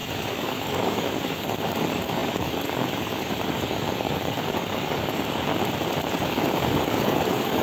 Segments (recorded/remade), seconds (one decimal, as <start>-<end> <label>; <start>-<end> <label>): 0.0-5.5 remade; 5.5-6.1 recorded; 6.1-7.6 remade